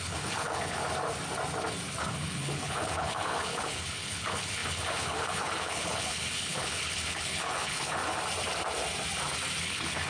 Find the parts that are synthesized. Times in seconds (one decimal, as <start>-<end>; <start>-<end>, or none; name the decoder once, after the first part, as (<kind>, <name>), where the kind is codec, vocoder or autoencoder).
0.0-0.8 (codec, HILCodec); 2.0-8.0; 9.6-10.1